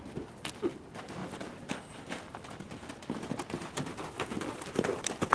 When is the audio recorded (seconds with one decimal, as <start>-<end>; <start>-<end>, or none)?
0.0-5.3